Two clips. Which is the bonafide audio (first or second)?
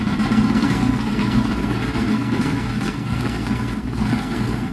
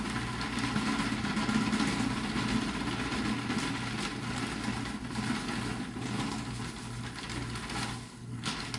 second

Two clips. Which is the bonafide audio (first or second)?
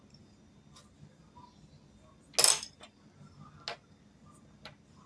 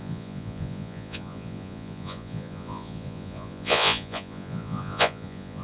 first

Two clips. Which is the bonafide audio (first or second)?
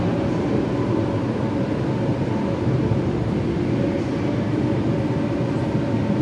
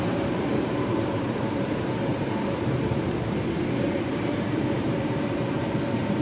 first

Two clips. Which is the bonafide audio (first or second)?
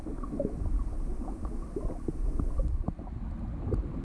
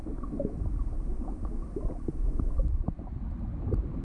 first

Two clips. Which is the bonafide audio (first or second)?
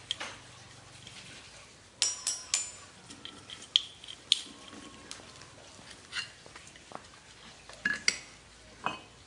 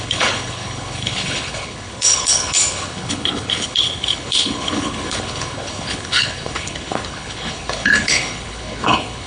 first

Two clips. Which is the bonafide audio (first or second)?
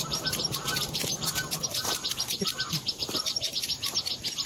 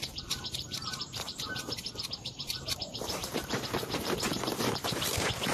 first